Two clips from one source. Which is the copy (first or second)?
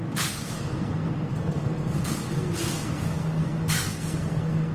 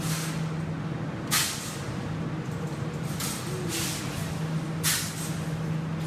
first